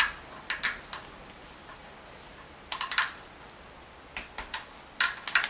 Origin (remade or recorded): recorded